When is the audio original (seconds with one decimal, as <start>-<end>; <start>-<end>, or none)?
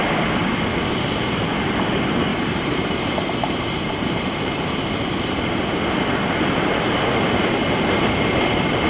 0.0-2.3; 5.3-8.9